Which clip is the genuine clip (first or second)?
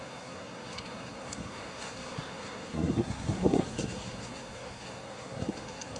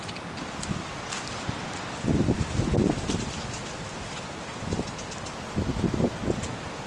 second